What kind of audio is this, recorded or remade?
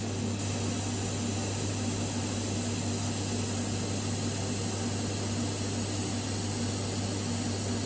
recorded